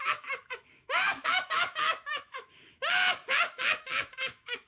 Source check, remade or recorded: remade